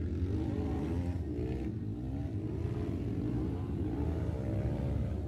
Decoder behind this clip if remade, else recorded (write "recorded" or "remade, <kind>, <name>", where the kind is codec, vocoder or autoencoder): recorded